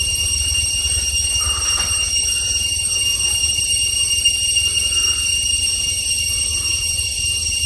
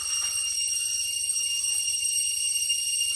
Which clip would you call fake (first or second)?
first